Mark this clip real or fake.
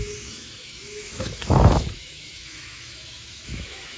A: fake